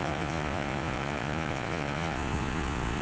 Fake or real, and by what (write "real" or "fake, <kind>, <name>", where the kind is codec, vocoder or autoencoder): fake, vocoder, Vocos